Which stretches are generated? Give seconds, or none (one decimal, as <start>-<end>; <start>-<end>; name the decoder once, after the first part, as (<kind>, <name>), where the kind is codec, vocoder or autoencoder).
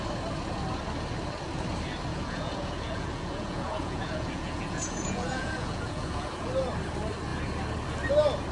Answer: 2.1-6.5 (vocoder, Vocos)